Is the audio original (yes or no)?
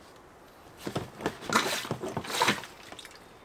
yes